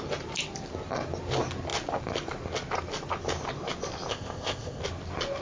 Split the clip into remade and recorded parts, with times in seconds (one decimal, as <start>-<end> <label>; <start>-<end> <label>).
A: 0.0-4.1 recorded; 4.1-4.8 remade; 4.8-5.4 recorded